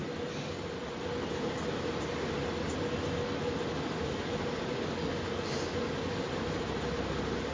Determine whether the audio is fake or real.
real